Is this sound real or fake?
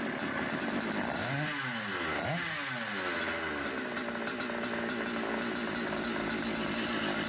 real